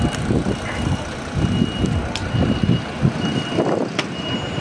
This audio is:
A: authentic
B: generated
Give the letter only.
A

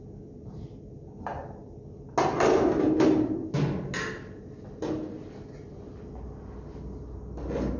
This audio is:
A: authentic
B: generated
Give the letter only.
A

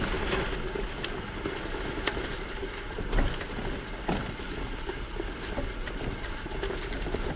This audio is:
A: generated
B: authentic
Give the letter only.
B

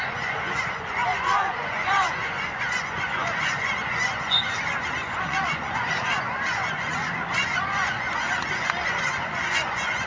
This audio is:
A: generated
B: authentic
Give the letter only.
A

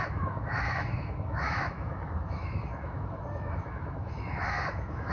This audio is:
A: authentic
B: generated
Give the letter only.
B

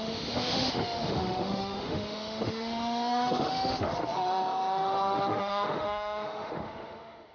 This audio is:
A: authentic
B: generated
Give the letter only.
B